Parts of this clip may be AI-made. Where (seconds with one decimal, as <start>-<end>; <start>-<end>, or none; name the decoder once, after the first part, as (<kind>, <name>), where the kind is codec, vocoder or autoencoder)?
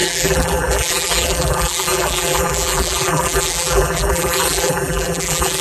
0.0-5.6 (vocoder, BigVGAN v2)